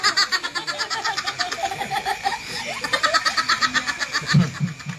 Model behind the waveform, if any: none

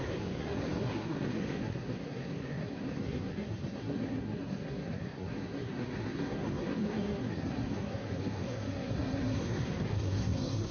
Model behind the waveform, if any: codec, SNAC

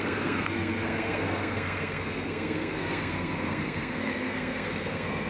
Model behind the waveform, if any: codec, SNAC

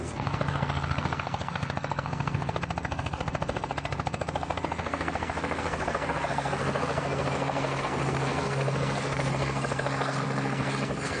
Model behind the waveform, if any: codec, SNAC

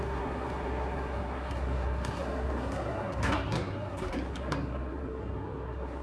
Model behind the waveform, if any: codec, SNAC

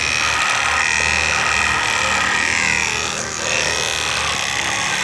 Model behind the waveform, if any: none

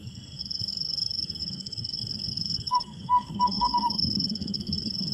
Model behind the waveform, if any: codec, SNAC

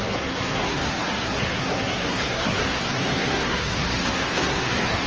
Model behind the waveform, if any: codec, SNAC